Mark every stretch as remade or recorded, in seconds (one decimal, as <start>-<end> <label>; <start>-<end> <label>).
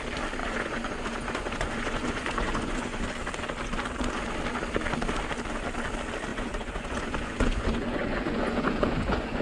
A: 0.0-0.4 recorded; 0.4-3.0 remade; 3.0-6.3 recorded; 6.3-9.4 remade